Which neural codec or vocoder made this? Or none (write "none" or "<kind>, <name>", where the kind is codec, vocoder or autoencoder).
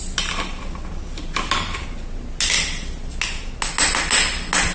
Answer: none